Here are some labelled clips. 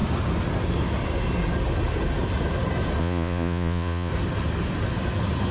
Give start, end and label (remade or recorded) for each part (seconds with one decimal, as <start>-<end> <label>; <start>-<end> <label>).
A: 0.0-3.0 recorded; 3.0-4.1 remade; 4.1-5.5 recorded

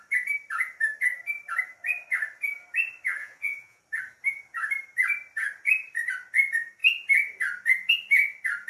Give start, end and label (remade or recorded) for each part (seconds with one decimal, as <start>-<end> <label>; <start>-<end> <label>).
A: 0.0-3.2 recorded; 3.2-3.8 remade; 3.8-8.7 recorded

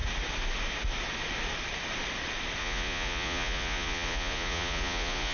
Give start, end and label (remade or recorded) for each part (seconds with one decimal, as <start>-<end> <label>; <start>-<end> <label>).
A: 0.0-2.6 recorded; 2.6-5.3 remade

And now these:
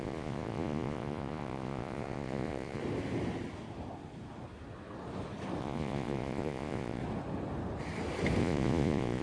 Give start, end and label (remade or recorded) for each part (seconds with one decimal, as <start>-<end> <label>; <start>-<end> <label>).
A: 0.0-2.8 remade; 2.8-5.6 recorded; 5.6-7.0 remade; 7.0-8.4 recorded; 8.4-9.2 remade

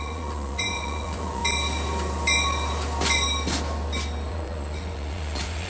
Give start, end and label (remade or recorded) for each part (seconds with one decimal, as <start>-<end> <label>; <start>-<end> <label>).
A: 0.0-1.4 remade; 1.4-4.3 recorded; 4.3-5.7 remade

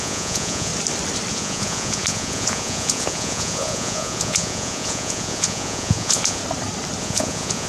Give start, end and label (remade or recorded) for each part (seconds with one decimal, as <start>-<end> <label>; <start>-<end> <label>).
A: 0.0-0.7 remade; 0.7-1.3 recorded; 1.3-6.4 remade; 6.4-7.0 recorded; 7.0-7.7 remade